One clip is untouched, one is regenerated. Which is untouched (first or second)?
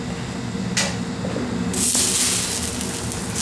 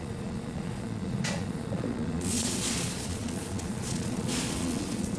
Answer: first